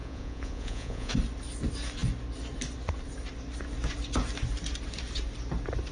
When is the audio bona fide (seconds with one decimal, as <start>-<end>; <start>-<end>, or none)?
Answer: 1.1-5.9

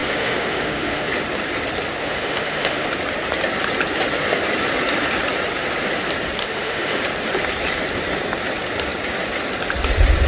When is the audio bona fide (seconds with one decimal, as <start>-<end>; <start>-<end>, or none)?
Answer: 1.1-2.0; 2.9-6.4; 7.0-10.3

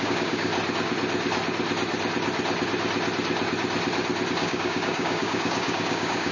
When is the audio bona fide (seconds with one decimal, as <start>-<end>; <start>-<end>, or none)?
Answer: 0.5-4.3

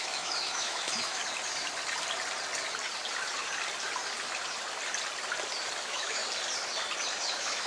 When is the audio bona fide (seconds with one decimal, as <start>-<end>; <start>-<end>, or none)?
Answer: 1.2-5.8; 6.2-7.2

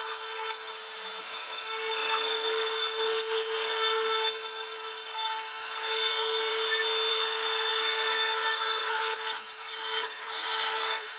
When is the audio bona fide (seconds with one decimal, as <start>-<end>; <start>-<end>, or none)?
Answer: 0.7-1.2; 6.5-7.1

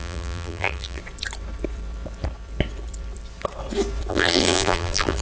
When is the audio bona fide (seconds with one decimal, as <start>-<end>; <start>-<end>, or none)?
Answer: 1.0-4.1